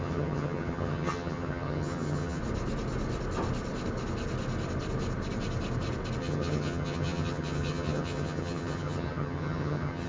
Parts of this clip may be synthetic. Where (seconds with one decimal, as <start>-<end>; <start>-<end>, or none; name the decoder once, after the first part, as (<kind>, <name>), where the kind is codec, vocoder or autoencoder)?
0.0-2.4 (vocoder, HiFi-GAN); 6.2-10.1